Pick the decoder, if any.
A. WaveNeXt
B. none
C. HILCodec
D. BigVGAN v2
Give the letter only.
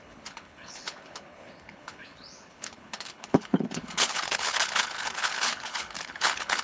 C